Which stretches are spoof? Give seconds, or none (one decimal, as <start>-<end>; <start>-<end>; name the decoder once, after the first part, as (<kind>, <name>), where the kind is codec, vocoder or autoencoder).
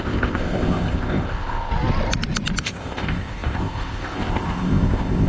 0.0-1.7 (codec, ZipCodec); 2.6-5.3